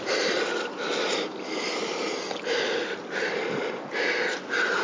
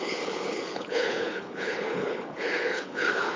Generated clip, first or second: second